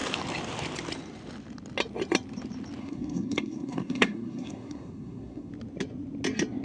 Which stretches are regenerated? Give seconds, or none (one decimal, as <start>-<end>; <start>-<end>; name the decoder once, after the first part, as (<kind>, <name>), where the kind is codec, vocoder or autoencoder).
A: 2.8-5.5 (codec, SNAC)